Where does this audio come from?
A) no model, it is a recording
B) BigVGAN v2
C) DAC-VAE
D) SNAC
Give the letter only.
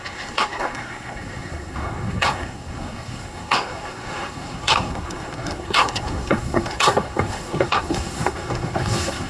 D